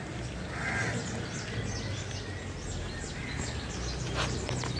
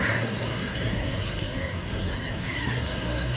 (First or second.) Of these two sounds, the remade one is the second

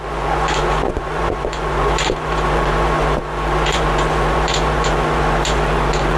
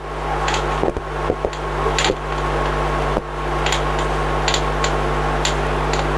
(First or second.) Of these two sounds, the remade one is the first